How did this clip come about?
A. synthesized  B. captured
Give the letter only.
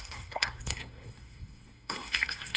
A